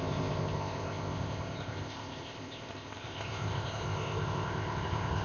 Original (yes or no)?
no